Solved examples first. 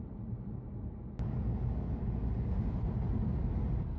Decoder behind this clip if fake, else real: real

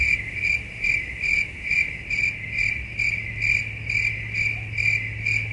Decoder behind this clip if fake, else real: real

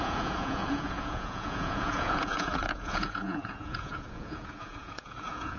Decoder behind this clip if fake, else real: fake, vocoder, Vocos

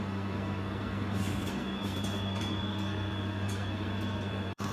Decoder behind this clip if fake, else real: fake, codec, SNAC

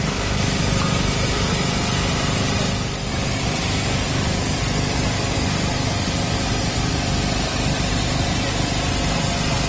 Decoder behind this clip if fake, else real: fake, vocoder, BigVGAN v2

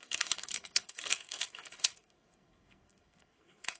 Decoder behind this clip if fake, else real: fake, codec, SNAC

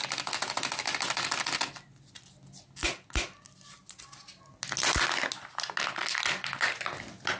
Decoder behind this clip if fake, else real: real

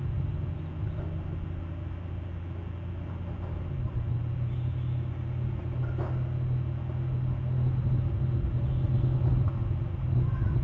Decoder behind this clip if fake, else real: real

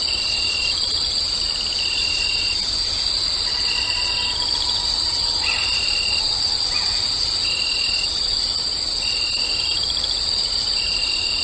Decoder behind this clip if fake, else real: real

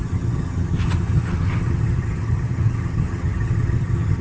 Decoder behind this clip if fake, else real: fake, vocoder, HiFi-GAN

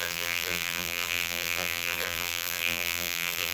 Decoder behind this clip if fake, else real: fake, vocoder, BigVGAN v2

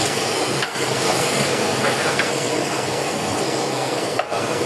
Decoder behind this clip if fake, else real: fake, codec, SNAC